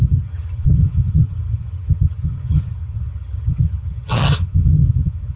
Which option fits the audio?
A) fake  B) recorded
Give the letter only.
A